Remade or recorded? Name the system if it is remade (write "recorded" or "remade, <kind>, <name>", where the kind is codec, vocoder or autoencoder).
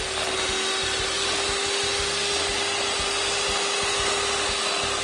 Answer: recorded